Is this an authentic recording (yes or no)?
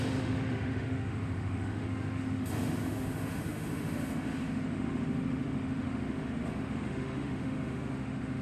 no